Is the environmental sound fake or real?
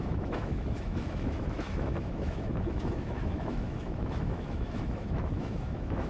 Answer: fake